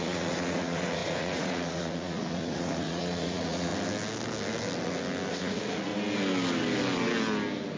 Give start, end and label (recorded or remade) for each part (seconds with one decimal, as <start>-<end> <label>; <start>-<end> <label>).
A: 0.0-3.7 remade; 3.7-5.3 recorded; 5.3-5.9 remade; 5.9-7.8 recorded